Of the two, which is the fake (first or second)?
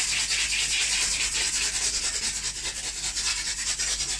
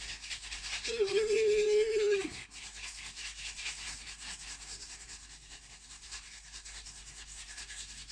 second